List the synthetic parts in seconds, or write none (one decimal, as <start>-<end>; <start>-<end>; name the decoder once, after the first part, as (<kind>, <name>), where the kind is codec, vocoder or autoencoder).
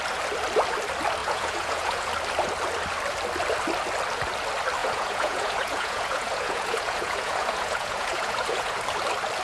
1.2-2.1 (vocoder, Vocos); 4.8-8.8